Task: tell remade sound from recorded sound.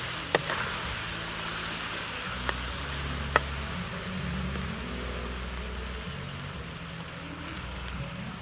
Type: recorded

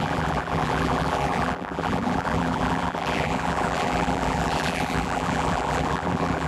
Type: remade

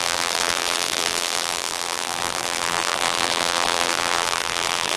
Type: remade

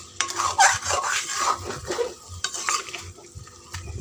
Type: remade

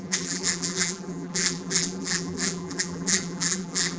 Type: remade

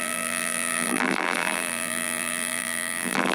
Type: remade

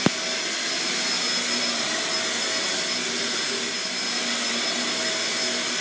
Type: recorded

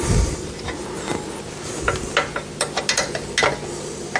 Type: recorded